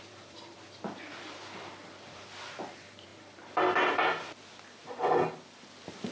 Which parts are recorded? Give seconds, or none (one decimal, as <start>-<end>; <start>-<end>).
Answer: none